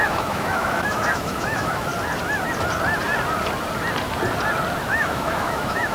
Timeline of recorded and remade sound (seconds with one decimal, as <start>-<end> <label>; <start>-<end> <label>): 0.0-1.9 remade; 1.9-4.8 recorded; 4.8-5.9 remade

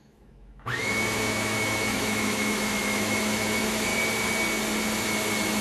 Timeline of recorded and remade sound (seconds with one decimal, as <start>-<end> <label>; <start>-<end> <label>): 0.0-3.9 remade; 3.9-5.6 recorded

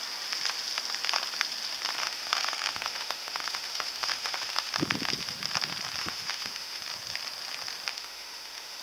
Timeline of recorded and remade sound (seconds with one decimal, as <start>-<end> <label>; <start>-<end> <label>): 0.0-2.0 recorded; 2.0-4.7 remade; 4.7-6.0 recorded; 6.0-6.8 remade; 6.8-7.9 recorded; 7.9-8.8 remade

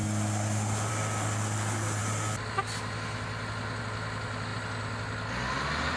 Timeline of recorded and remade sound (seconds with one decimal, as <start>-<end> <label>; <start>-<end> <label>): 0.0-6.0 recorded

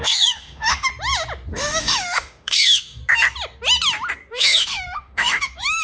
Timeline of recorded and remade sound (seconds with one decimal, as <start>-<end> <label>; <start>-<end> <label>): 0.0-0.9 remade; 0.9-1.5 recorded; 1.5-3.0 remade; 3.0-4.3 recorded; 4.3-5.8 remade